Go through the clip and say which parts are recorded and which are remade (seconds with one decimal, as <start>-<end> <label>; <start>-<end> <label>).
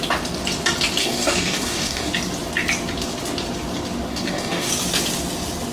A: 0.0-1.0 recorded; 1.0-2.1 remade; 2.1-4.1 recorded; 4.1-4.7 remade; 4.7-5.7 recorded